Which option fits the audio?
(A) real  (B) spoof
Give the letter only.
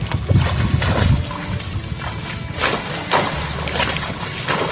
A